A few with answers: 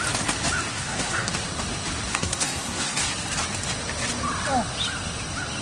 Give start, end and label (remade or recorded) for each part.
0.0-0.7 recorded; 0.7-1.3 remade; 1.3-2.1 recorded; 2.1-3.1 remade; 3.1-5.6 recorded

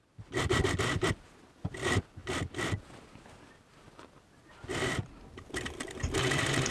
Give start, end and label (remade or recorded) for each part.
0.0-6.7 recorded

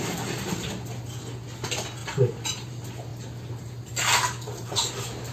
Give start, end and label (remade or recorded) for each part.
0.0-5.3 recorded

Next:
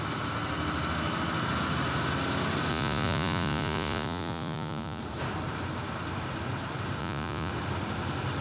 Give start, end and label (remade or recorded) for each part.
0.0-2.7 recorded; 2.7-5.0 remade; 5.0-7.0 recorded; 7.0-7.5 remade; 7.5-8.4 recorded

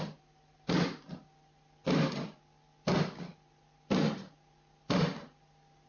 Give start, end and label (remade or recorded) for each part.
0.0-5.9 recorded

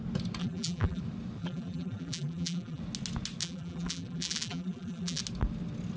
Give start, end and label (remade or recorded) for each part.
0.0-0.4 recorded; 0.4-1.0 remade; 1.0-1.4 recorded; 1.4-2.8 remade; 2.8-3.4 recorded; 3.4-5.2 remade; 5.2-6.0 recorded

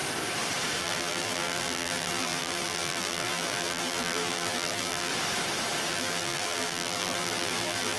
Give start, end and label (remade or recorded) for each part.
0.0-0.8 recorded; 0.8-5.1 remade; 5.1-5.9 recorded; 5.9-8.0 remade

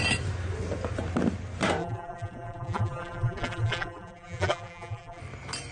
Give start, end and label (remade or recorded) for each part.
0.0-1.8 recorded; 1.8-5.2 remade; 5.2-5.7 recorded